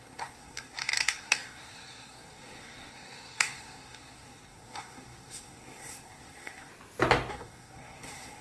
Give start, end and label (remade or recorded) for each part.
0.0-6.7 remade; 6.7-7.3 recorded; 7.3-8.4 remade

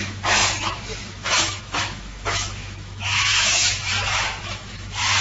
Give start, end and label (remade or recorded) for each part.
0.0-5.2 remade

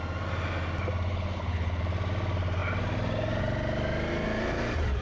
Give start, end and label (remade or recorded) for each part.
0.0-1.1 recorded; 1.1-1.8 remade; 1.8-5.0 recorded

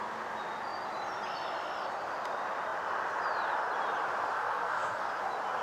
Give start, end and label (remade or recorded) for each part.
0.0-4.4 recorded; 4.4-5.1 remade; 5.1-5.6 recorded

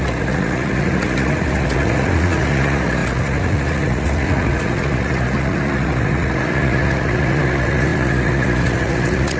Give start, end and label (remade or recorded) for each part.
0.0-9.4 remade

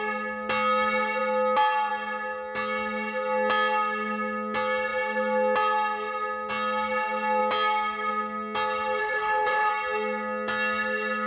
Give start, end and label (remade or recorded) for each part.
0.0-9.0 recorded; 9.0-9.7 remade; 9.7-11.3 recorded

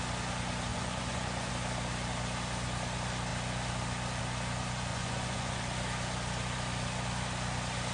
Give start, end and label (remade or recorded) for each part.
0.0-0.7 recorded; 0.7-1.5 remade; 1.5-4.9 recorded; 4.9-5.6 remade; 5.6-7.9 recorded

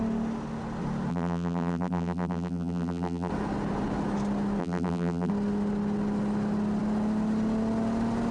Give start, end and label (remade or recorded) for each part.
0.0-1.1 recorded; 1.1-3.3 remade; 3.3-4.6 recorded; 4.6-5.3 remade; 5.3-8.3 recorded